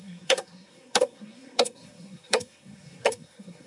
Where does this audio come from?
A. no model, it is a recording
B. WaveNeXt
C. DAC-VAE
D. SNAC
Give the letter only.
D